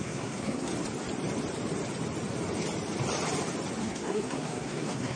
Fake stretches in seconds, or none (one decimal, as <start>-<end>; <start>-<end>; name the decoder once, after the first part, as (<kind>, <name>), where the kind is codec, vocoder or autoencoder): 0.0-0.7 (codec, SNAC); 3.8-5.2